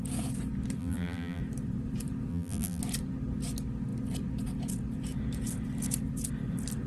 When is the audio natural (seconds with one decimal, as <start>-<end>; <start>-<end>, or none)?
0.0-0.8; 1.4-2.3; 2.8-6.9